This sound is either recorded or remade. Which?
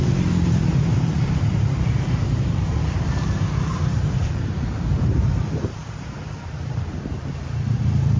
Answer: remade